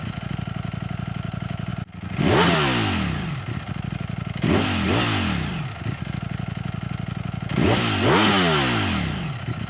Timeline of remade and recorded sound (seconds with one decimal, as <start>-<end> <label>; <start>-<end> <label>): 0.0-9.7 recorded